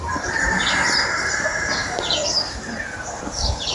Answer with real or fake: fake